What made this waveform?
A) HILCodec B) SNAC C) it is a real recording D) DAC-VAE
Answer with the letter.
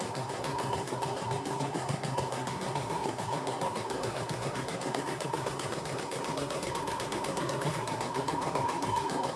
B